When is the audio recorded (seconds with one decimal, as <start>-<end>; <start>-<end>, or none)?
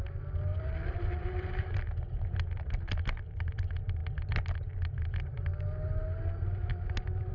0.0-0.5; 1.5-7.3